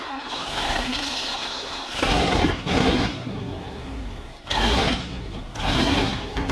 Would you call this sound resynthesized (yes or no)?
yes